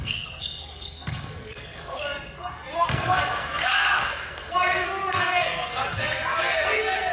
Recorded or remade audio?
remade